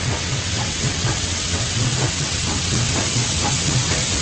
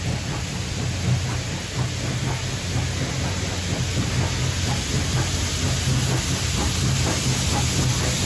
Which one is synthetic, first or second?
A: first